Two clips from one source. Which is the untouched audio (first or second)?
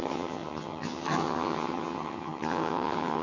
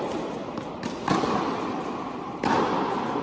second